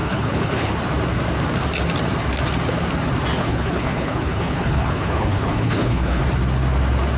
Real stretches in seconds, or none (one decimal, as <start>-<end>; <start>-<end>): 0.7-3.4; 6.2-7.2